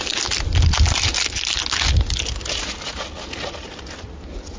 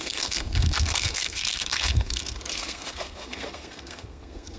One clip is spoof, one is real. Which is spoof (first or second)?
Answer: second